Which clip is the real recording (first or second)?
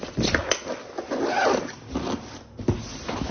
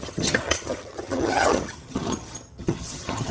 first